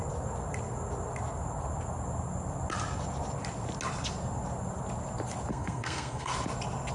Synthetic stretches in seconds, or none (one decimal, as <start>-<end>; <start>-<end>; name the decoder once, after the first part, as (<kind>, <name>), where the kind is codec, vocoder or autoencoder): 5.5-6.3 (codec, SNAC)